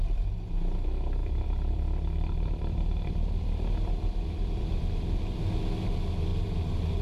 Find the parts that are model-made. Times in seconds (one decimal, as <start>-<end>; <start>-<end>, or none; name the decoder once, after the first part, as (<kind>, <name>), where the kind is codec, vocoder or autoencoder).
1.2-5.4 (vocoder, BigVGAN v2)